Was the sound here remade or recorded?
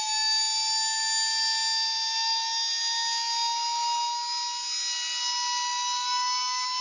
recorded